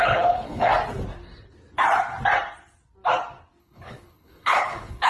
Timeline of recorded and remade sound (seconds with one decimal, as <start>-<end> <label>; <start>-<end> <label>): 0.0-0.7 remade; 0.7-3.6 recorded; 3.6-5.1 remade